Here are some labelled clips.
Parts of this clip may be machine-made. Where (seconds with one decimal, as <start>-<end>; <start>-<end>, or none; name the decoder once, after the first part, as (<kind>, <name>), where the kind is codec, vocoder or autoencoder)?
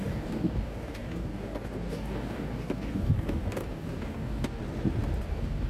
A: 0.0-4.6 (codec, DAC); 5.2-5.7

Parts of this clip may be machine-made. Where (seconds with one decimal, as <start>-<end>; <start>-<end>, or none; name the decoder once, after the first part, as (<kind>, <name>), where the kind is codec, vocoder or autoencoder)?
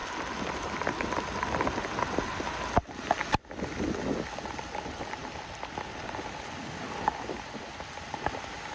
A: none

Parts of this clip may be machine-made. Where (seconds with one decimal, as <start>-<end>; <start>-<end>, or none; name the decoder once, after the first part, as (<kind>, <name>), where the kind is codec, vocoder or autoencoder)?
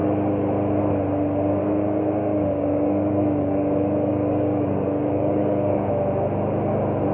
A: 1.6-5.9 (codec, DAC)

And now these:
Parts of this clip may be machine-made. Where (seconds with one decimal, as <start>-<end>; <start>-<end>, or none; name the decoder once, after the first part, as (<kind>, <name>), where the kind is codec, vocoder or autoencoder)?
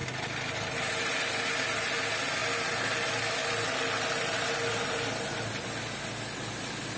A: none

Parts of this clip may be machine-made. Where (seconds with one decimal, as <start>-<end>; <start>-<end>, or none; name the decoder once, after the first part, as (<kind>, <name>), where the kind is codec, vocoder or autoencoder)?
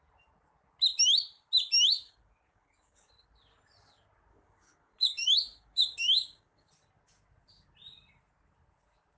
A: 1.9-3.1 (codec, DAC); 4.3-6.7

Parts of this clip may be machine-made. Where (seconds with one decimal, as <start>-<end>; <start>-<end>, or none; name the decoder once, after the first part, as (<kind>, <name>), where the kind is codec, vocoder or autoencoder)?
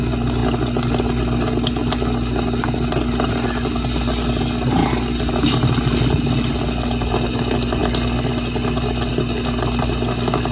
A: none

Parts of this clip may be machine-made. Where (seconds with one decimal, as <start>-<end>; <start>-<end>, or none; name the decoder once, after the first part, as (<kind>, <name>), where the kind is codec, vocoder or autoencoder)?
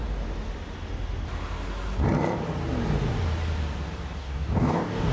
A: 4.2-5.1 (codec, DAC)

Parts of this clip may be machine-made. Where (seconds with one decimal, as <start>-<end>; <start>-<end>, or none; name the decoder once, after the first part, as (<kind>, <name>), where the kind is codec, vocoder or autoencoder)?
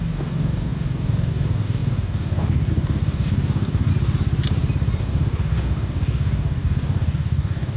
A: 0.0-3.9 (codec, DAC); 5.0-7.8